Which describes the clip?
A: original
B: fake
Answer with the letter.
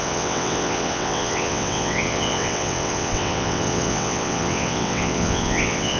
B